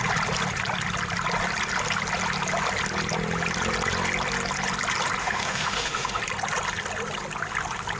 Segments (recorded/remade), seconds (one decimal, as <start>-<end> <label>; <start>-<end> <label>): 0.0-5.2 recorded; 5.2-6.2 remade; 6.2-8.0 recorded